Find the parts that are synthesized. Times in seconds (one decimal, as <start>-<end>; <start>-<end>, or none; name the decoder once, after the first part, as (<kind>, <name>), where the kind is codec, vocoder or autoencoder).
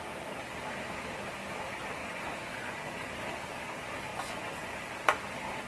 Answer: 2.0-3.1 (vocoder, Vocos); 4.1-4.9